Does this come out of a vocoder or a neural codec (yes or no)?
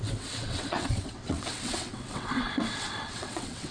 yes